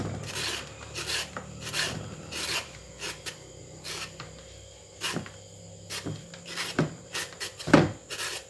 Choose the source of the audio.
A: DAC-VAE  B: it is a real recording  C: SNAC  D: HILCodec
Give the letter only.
B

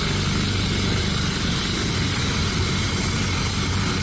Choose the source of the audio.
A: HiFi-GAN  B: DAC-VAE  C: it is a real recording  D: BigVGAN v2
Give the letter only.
C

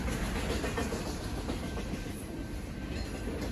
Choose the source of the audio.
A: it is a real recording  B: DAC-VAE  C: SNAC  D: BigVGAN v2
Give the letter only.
A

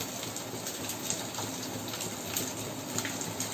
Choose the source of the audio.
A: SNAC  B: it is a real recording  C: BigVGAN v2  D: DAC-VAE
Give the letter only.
B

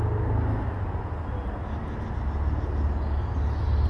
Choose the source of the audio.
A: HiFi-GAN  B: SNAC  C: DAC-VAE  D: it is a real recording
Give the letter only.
D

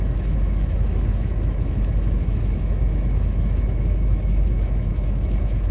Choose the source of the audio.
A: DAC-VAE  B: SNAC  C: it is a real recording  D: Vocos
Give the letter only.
A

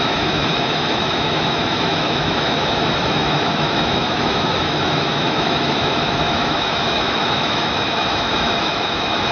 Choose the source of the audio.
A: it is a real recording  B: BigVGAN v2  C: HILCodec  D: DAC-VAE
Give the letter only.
D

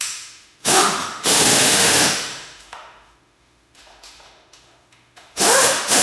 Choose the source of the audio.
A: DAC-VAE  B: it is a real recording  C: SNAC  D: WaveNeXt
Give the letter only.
A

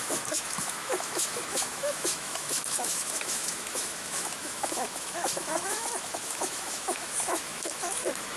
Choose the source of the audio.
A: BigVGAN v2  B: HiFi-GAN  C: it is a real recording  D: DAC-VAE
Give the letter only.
D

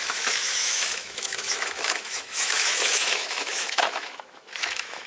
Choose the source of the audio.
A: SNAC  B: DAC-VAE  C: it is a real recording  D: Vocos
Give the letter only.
B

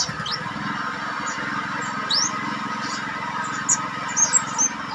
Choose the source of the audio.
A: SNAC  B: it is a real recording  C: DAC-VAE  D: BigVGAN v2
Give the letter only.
B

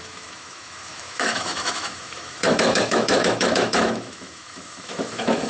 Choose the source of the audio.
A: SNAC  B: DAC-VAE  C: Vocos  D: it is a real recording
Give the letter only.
B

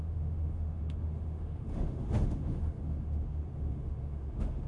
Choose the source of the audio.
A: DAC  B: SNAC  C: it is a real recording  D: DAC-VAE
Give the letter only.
D